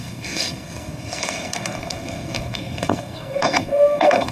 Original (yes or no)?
no